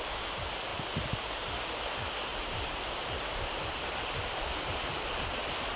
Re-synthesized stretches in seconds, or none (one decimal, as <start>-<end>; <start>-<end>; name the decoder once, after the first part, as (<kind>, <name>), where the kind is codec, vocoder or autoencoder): 0.7-1.5 (vocoder, BigVGAN v2); 2.3-4.4